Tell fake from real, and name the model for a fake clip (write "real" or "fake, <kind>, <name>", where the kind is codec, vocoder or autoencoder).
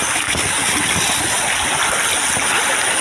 real